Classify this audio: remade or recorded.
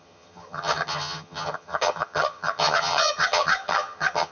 remade